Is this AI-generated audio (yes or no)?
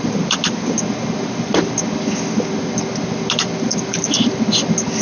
no